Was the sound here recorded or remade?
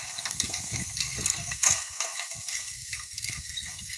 remade